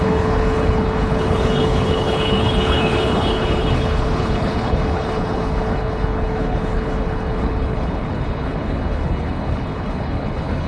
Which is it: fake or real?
fake